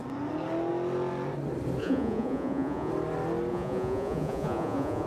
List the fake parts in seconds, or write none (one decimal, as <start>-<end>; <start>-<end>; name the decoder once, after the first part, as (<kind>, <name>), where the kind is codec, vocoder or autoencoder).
1.8-2.9 (vocoder, Vocos); 3.5-5.1